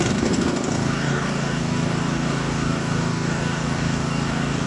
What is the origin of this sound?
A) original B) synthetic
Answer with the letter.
B